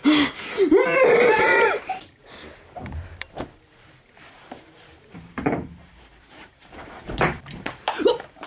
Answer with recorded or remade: remade